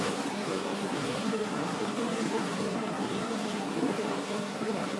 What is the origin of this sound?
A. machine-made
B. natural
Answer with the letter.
A